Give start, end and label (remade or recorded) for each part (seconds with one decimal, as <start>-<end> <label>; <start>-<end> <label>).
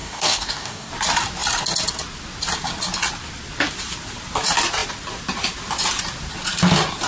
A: 0.0-0.9 remade; 0.9-7.1 recorded